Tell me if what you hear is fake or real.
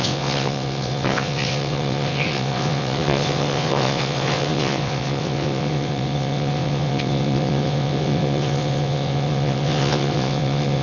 fake